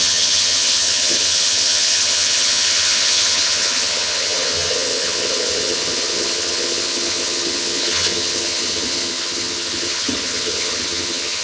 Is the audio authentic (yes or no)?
no